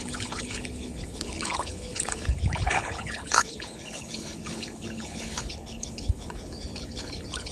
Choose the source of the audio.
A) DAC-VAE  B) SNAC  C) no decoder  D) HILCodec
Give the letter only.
D